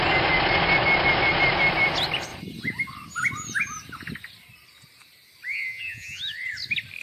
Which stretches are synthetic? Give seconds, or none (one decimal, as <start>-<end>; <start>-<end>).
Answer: 5.5-6.2